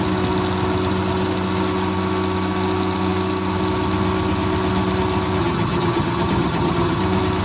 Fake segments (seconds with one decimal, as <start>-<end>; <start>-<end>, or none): 5.4-7.0